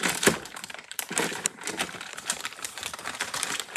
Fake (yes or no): yes